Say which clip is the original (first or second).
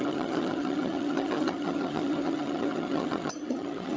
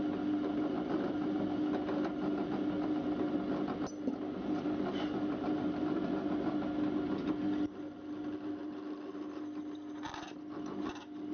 second